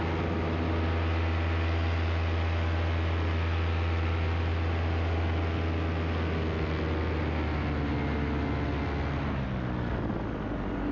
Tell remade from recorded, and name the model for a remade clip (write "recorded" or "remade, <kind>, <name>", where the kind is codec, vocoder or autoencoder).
recorded